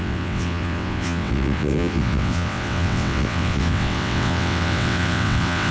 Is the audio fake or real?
fake